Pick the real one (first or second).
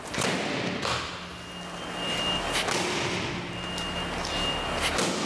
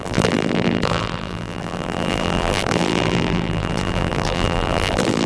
first